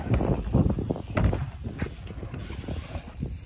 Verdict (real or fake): real